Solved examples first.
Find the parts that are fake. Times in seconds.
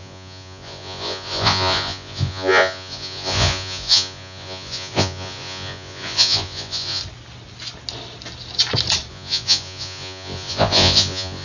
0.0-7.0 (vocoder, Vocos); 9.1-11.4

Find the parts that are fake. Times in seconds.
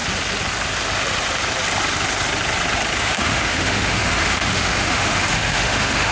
3.0-6.1 (autoencoder, DAC-VAE)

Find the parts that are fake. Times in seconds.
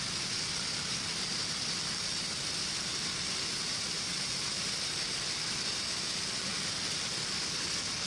none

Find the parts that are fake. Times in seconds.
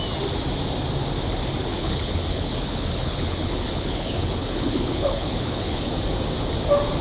1.7-5.9 (codec, HILCodec)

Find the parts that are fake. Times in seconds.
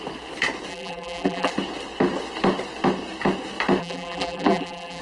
0.7-1.5 (vocoder, BigVGAN v2); 3.8-5.0